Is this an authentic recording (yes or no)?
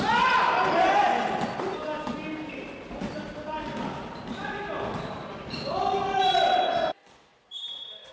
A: yes